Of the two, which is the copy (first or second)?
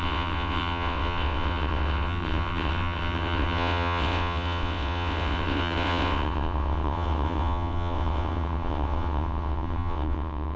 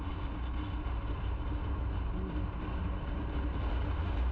first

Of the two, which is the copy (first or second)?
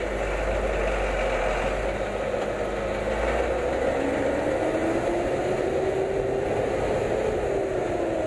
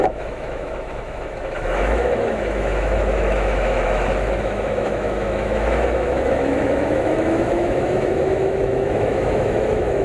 second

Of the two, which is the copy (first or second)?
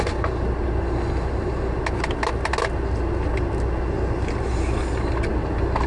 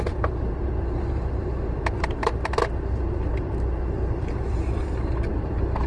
second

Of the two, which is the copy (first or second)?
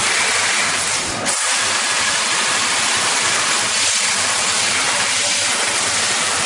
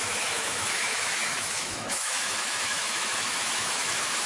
second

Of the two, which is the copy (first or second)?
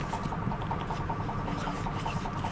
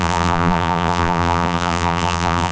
second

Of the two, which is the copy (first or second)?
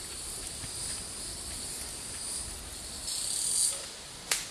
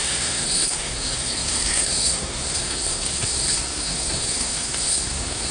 second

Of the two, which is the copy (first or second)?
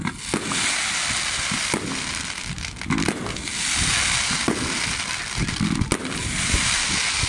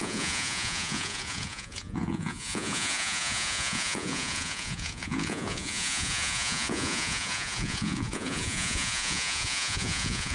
second